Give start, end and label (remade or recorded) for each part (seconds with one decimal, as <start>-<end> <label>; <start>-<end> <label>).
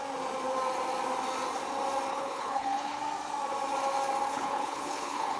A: 0.0-2.1 recorded; 2.1-3.0 remade; 3.0-4.3 recorded; 4.3-5.4 remade